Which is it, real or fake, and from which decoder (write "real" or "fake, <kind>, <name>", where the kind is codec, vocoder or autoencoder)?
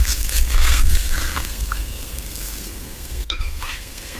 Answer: fake, codec, SNAC